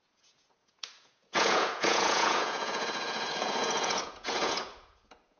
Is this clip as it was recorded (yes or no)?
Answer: no